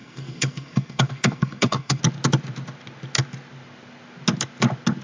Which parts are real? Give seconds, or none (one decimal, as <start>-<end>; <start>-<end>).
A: 2.0-5.0